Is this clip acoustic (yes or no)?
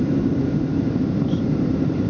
no